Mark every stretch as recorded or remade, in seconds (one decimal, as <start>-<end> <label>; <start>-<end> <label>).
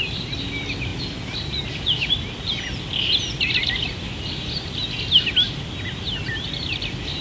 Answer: 0.0-7.2 recorded